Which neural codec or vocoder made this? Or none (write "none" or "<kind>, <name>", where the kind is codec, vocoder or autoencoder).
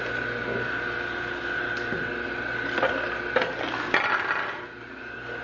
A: none